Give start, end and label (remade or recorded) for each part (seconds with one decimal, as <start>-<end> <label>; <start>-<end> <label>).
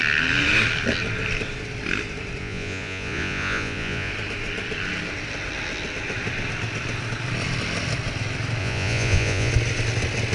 0.0-2.4 recorded; 2.4-4.1 remade; 4.1-8.6 recorded; 8.6-9.5 remade; 9.5-10.3 recorded